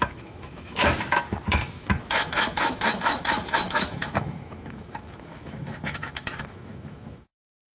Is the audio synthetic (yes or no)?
yes